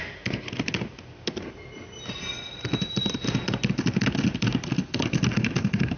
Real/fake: real